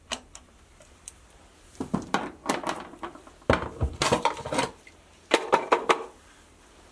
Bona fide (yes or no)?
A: no